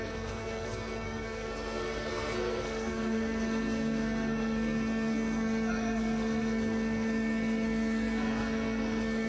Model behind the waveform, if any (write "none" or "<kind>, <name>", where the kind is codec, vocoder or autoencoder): codec, SNAC